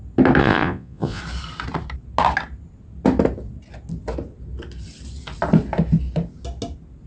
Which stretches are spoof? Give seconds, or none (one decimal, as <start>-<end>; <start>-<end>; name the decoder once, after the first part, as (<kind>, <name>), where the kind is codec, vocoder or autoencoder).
0.4-1.2 (vocoder, Vocos)